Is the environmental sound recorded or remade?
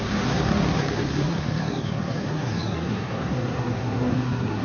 remade